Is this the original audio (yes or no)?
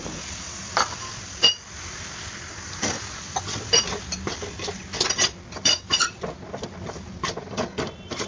no